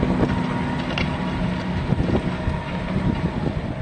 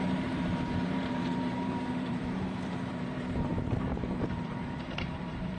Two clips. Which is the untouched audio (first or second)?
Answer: first